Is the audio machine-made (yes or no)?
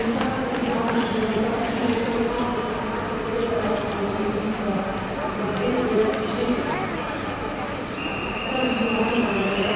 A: yes